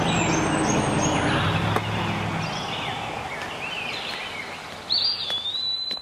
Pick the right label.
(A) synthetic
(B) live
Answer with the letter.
B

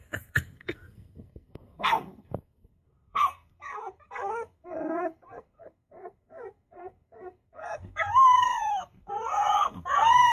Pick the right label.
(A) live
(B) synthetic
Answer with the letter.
B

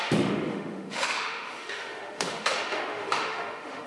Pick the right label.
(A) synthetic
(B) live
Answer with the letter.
A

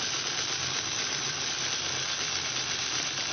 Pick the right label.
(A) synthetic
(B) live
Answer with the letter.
B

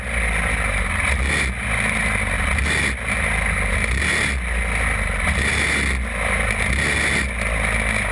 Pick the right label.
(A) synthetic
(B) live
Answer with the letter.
B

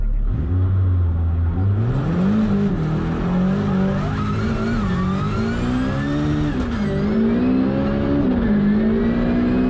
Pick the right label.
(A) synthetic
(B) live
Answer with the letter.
B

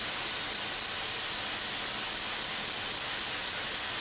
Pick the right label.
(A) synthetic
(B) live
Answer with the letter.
B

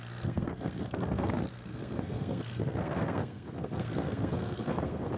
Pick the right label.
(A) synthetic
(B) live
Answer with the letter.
A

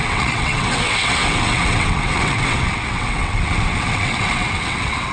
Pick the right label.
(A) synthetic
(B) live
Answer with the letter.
A